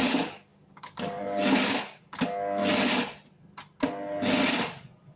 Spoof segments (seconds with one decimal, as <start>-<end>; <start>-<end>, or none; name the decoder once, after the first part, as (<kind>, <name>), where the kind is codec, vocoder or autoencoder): 0.0-2.6 (codec, DAC); 4.5-5.2